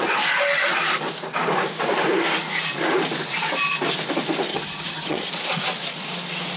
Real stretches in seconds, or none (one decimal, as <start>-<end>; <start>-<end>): 0.0-4.5; 5.3-6.6